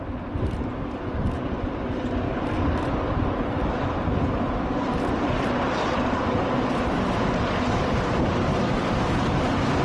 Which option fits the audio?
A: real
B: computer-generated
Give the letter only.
A